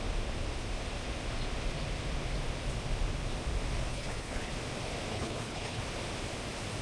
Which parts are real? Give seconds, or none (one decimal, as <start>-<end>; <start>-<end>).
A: 0.0-3.9; 4.5-5.1; 5.8-6.8